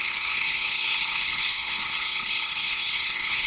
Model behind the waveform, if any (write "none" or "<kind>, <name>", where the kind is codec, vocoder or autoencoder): codec, HILCodec